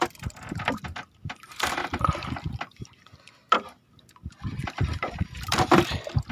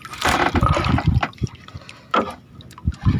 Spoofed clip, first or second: second